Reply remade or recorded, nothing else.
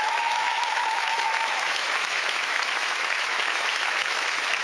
remade